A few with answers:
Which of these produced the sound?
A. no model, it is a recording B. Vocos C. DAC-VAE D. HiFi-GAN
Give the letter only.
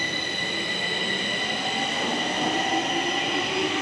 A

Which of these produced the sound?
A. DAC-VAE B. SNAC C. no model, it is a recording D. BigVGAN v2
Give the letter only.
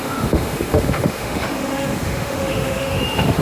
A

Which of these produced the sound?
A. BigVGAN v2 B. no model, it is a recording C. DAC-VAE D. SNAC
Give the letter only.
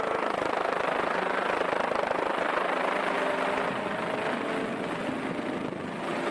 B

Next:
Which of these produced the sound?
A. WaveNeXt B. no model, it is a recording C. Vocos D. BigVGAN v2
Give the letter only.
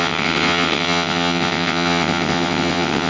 A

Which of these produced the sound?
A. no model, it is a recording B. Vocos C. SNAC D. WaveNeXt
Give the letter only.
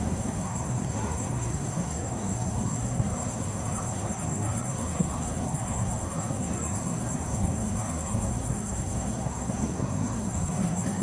C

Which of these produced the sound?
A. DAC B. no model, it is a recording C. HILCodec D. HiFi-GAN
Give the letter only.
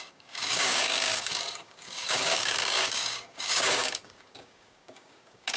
A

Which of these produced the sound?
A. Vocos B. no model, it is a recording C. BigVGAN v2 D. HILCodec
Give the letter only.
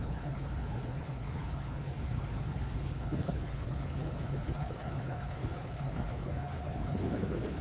D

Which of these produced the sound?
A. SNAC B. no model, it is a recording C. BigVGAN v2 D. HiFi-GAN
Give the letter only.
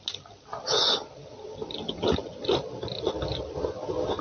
B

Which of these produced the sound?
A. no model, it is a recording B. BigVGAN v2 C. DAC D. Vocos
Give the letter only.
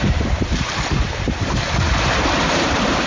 B